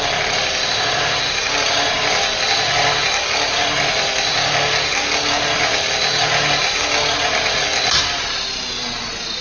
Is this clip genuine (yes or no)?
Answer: yes